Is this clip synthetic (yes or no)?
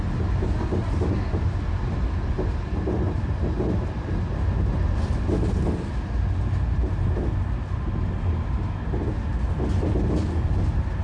no